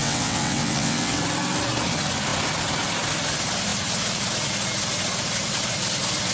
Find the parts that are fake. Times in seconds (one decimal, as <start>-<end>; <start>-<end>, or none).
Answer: 0.0-1.2